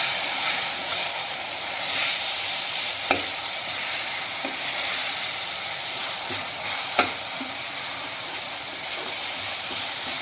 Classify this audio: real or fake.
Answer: fake